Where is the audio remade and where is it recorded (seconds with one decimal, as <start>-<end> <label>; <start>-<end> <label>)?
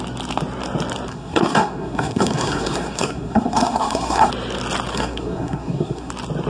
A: 0.0-1.1 recorded; 1.1-4.3 remade; 4.3-4.9 recorded; 4.9-6.1 remade; 6.1-6.5 recorded